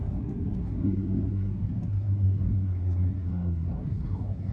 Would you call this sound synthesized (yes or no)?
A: yes